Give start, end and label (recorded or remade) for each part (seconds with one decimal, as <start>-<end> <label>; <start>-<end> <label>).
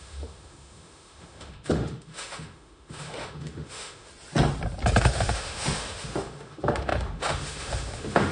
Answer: 0.0-4.1 remade; 4.1-5.0 recorded; 5.0-8.3 remade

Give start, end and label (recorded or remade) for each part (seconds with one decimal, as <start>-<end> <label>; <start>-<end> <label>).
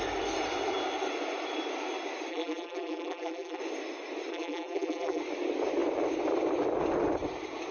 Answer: 0.0-2.3 recorded; 2.3-3.6 remade; 3.6-4.3 recorded; 4.3-5.2 remade; 5.2-7.7 recorded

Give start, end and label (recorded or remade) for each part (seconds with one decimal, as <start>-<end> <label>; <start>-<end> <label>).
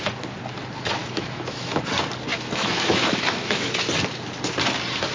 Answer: 0.0-1.0 recorded; 1.0-1.8 remade; 1.8-2.3 recorded; 2.3-3.8 remade; 3.8-5.1 recorded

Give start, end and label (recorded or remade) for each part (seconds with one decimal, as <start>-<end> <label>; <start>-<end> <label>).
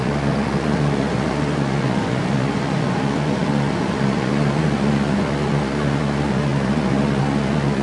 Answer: 0.0-7.8 remade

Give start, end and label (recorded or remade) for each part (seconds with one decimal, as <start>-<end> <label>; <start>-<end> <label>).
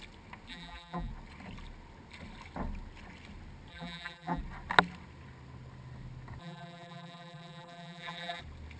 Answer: 0.0-0.5 recorded; 0.5-1.1 remade; 1.1-3.7 recorded; 3.7-4.4 remade; 4.4-6.4 recorded; 6.4-8.4 remade; 8.4-8.8 recorded